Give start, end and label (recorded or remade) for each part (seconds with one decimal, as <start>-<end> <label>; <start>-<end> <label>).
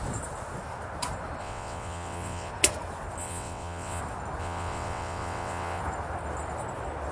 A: 0.0-1.4 recorded; 1.4-2.5 remade; 2.5-3.2 recorded; 3.2-4.0 remade; 4.0-4.4 recorded; 4.4-5.8 remade; 5.8-7.1 recorded